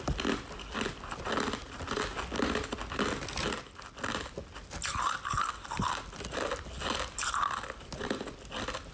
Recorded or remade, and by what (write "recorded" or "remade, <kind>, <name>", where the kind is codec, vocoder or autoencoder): recorded